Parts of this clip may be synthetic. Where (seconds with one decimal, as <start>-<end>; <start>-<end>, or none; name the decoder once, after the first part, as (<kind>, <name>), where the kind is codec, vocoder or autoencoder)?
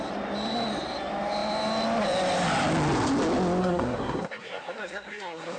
3.6-5.6 (codec, SNAC)